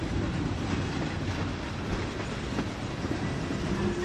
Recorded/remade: recorded